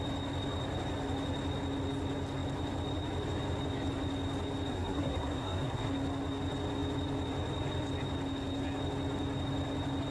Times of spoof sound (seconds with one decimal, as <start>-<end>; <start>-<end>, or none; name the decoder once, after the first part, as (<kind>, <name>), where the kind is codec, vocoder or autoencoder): 4.7-5.9 (codec, SNAC)